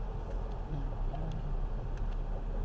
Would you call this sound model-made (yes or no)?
no